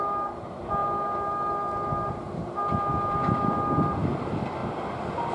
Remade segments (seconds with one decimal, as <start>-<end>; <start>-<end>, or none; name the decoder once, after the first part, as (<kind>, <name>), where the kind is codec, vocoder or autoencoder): none